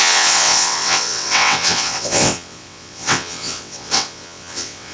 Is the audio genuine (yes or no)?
no